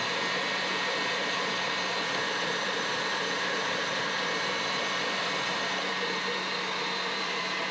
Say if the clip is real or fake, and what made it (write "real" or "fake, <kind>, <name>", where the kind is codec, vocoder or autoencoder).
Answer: fake, vocoder, BigVGAN v2